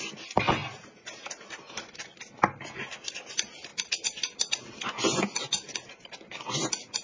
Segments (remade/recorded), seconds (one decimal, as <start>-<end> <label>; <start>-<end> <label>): 0.0-0.6 recorded; 0.6-1.4 remade; 1.4-3.7 recorded; 3.7-4.5 remade; 4.5-7.0 recorded